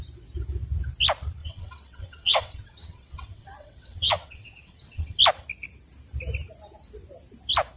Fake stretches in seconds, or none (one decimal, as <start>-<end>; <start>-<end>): 1.4-5.2